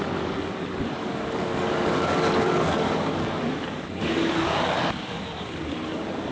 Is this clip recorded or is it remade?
remade